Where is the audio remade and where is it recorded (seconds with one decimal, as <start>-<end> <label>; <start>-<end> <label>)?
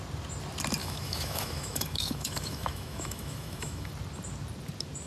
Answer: 0.0-0.8 recorded; 0.8-3.9 remade; 3.9-5.1 recorded